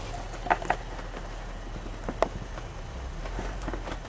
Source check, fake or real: real